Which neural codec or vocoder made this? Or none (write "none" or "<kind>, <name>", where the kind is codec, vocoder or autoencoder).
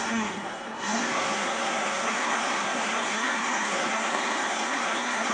codec, SNAC